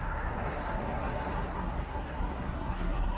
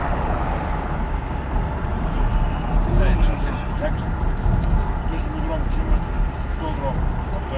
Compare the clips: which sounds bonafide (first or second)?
second